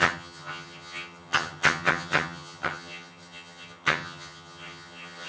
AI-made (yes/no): yes